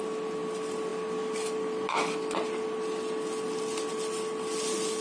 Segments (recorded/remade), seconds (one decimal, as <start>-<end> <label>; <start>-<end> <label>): 0.0-5.0 recorded